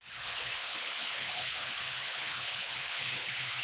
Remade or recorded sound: remade